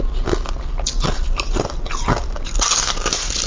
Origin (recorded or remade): recorded